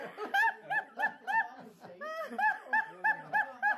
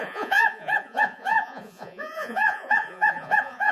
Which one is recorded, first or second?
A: first